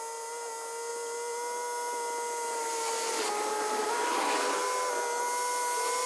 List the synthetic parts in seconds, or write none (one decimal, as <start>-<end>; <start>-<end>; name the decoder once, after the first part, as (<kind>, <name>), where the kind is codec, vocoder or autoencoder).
none